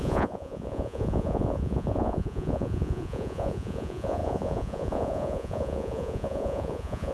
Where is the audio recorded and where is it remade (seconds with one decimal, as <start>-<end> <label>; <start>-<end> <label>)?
0.0-7.1 remade